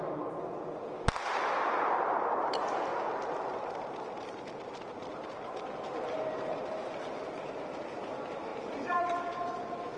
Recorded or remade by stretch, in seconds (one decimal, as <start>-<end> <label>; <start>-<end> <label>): 0.0-10.0 recorded

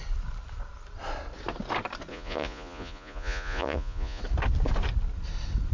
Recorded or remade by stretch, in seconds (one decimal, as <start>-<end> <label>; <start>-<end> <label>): 0.0-2.1 recorded; 2.1-4.2 remade; 4.2-5.7 recorded

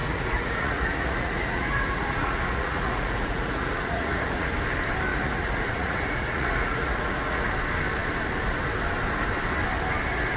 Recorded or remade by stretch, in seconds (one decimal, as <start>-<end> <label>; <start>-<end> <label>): 0.0-4.5 remade; 4.5-5.1 recorded; 5.1-7.5 remade; 7.5-10.4 recorded

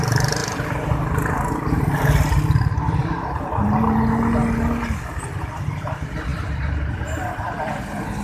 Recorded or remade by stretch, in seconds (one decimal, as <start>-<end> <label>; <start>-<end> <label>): 0.0-8.2 recorded

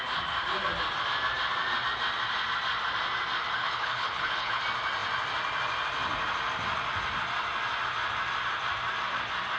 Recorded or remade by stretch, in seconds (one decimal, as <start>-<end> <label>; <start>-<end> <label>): 0.0-3.6 recorded; 3.6-4.6 remade; 4.6-9.6 recorded

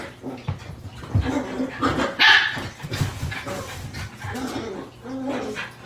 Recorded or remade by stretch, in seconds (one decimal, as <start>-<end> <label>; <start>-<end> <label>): 0.0-5.9 recorded

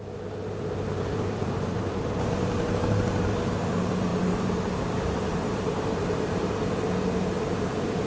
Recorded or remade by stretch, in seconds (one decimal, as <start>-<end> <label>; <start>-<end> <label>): 0.0-8.1 remade

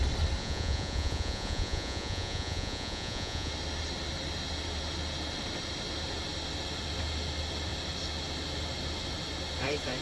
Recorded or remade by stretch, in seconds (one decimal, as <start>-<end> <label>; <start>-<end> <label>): 0.0-0.4 recorded; 0.4-3.5 remade; 3.5-10.0 recorded